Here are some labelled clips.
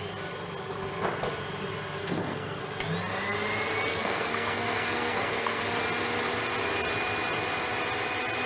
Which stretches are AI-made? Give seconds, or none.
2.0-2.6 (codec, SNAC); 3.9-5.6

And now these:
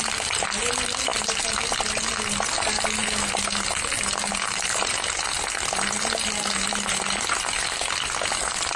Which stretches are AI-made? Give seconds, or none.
none

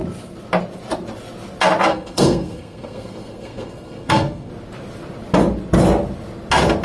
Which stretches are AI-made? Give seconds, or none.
1.9-4.5 (codec, SNAC)

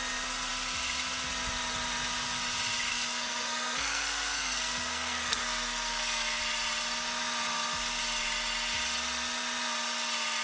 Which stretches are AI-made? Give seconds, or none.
2.9-6.4 (codec, SNAC)

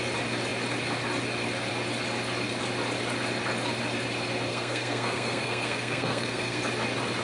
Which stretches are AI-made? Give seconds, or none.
4.5-6.6 (codec, SNAC)

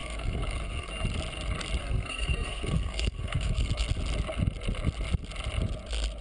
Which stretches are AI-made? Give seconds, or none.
0.0-0.9 (codec, SNAC); 1.8-3.9